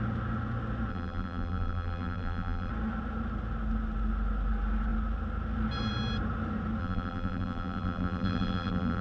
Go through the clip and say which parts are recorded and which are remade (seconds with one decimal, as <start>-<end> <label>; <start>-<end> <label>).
0.0-0.9 recorded; 0.9-2.7 remade; 2.7-6.8 recorded; 6.8-9.0 remade